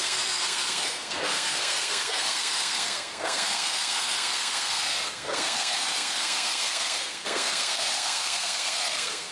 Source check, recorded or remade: remade